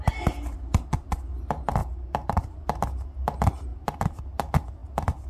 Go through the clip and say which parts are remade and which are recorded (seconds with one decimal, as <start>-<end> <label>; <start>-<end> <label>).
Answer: 0.0-1.8 recorded; 1.8-2.6 remade; 2.6-5.3 recorded